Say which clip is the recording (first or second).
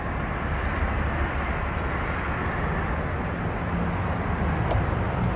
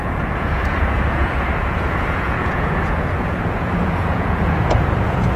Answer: first